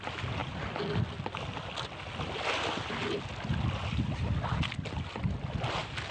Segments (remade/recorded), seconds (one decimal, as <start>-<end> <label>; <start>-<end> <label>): 0.0-6.1 recorded